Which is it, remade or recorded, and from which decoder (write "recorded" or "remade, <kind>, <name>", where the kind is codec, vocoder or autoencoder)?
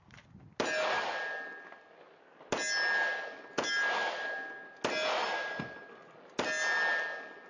recorded